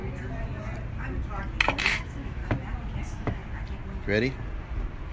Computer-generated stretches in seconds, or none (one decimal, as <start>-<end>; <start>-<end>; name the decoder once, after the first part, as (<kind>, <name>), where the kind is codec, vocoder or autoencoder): 1.8-2.4 (autoencoder, DAC-VAE); 3.0-3.4